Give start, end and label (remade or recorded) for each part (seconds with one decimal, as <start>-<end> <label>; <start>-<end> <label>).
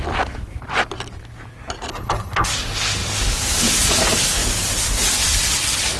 0.0-1.9 recorded; 1.9-2.5 remade; 2.5-6.0 recorded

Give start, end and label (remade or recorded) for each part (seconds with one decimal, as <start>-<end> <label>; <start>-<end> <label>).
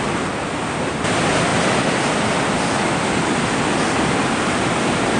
0.0-5.2 recorded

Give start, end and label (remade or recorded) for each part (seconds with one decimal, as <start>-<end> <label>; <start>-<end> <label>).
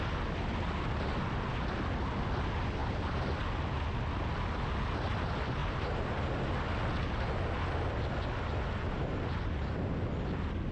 0.0-2.8 recorded; 2.8-3.3 remade; 3.3-5.6 recorded; 5.6-6.2 remade; 6.2-10.7 recorded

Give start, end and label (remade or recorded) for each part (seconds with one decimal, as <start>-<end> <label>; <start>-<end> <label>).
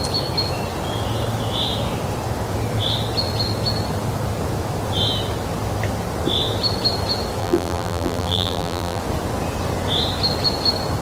0.0-7.4 recorded; 7.4-9.0 remade; 9.0-11.0 recorded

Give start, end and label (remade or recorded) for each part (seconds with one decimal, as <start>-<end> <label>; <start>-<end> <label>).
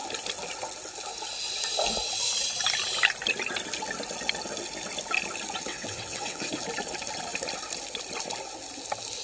0.0-5.7 recorded; 5.7-6.5 remade; 6.5-9.2 recorded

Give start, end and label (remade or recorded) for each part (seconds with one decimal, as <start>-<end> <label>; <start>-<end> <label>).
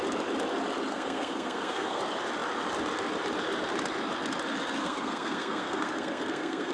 0.0-0.9 recorded; 0.9-2.0 remade; 2.0-4.8 recorded; 4.8-6.7 remade